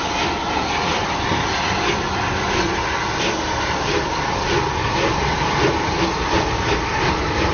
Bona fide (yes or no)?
yes